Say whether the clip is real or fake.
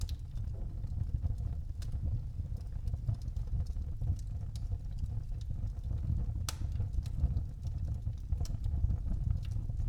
real